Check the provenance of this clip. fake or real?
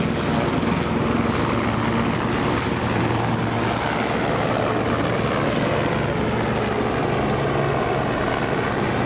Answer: real